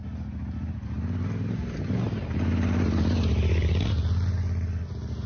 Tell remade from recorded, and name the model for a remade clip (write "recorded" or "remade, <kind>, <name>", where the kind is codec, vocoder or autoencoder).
recorded